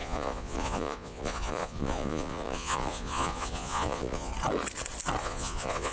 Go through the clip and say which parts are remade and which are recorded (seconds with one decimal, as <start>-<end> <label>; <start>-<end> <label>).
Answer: 0.0-4.3 remade; 4.3-5.2 recorded; 5.2-5.9 remade